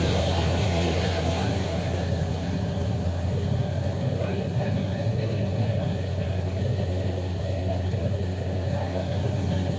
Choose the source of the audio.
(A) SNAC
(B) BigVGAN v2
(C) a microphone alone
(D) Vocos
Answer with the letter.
A